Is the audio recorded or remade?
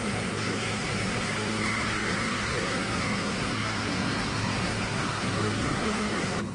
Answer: remade